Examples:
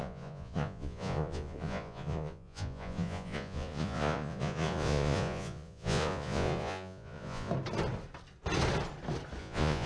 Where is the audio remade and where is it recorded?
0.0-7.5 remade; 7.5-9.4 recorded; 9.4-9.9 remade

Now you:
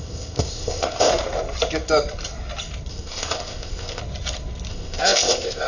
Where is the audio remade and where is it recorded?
0.0-1.1 remade; 1.1-2.9 recorded; 2.9-4.0 remade; 4.0-4.7 recorded; 4.7-5.7 remade

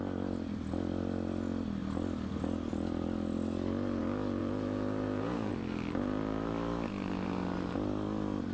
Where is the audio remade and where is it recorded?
0.0-4.4 recorded; 4.4-5.5 remade; 5.5-8.5 recorded

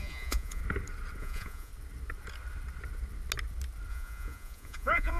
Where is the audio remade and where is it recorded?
0.0-0.6 remade; 0.6-1.2 recorded; 1.2-1.7 remade; 1.7-3.9 recorded; 3.9-5.2 remade

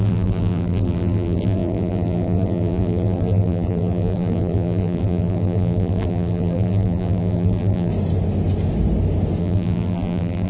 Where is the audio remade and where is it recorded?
0.0-7.9 remade; 7.9-9.4 recorded; 9.4-10.5 remade

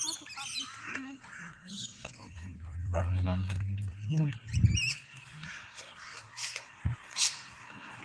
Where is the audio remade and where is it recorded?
0.0-0.8 recorded; 0.8-4.3 remade; 4.3-4.9 recorded; 4.9-8.0 remade

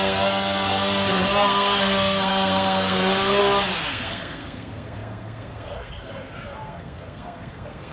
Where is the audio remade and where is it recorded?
0.0-3.4 remade; 3.4-3.9 recorded; 3.9-7.9 remade

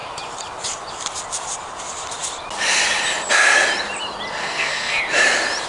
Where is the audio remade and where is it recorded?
0.0-4.4 recorded; 4.4-5.0 remade; 5.0-5.7 recorded